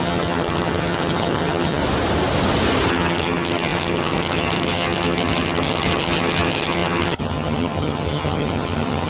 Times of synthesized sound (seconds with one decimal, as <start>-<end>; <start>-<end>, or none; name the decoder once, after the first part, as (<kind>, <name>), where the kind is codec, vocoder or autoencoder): 0.0-1.8 (vocoder, HiFi-GAN); 2.9-9.1